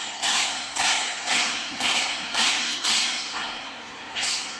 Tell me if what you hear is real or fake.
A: fake